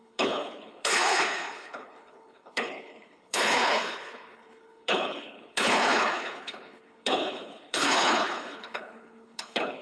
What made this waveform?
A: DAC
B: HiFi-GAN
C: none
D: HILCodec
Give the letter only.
D